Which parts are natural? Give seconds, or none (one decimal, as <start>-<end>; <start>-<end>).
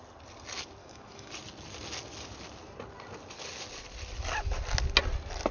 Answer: 0.0-0.8; 1.3-5.5